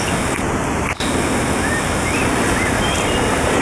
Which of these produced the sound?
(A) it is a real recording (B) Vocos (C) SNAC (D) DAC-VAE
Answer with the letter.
A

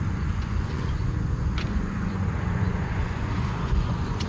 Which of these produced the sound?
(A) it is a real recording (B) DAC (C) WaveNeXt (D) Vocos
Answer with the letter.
D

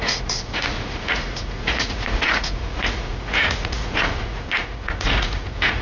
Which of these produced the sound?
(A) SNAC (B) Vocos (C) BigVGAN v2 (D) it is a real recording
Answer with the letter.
B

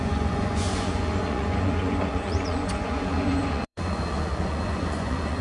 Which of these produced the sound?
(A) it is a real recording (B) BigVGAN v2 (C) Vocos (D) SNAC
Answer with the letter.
C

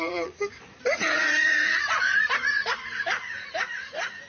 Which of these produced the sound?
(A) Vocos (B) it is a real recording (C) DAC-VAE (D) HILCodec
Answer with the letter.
A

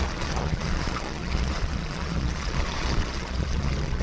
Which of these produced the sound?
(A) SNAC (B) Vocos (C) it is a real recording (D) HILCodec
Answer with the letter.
B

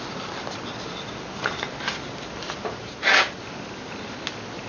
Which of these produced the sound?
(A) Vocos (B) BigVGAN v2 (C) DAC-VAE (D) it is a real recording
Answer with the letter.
D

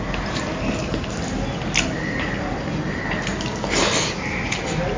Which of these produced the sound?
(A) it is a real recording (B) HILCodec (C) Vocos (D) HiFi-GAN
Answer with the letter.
A